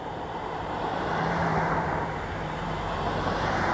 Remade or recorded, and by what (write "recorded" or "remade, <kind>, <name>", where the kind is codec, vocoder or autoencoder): remade, vocoder, BigVGAN v2